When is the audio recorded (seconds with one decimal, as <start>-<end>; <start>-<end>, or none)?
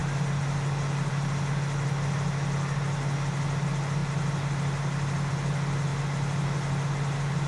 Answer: 1.1-4.0; 5.3-5.9